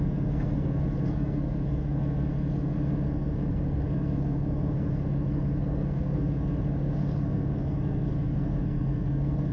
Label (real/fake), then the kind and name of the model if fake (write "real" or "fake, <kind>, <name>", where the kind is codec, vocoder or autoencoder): fake, codec, SNAC